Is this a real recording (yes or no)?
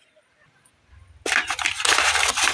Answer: yes